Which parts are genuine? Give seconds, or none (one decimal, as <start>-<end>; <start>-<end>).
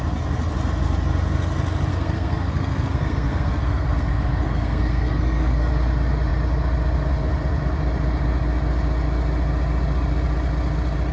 0.0-1.9; 5.7-11.1